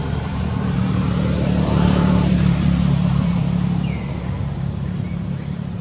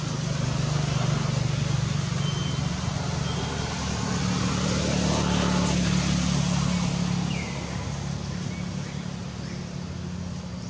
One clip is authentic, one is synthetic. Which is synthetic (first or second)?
first